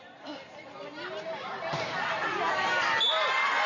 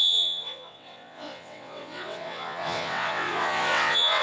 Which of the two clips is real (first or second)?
first